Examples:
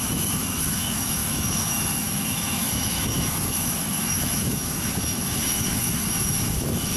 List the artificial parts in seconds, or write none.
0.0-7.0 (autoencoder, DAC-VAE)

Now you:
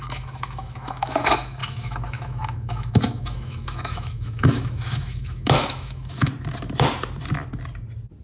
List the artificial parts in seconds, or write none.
0.0-6.3 (autoencoder, DAC-VAE)

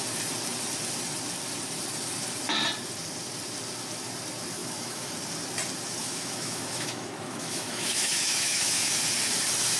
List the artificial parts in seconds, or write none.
4.6-5.1 (autoencoder, DAC-VAE); 6.0-8.9

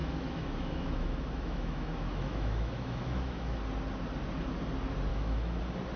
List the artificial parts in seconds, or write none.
0.0-3.6 (autoencoder, DAC-VAE); 5.1-5.6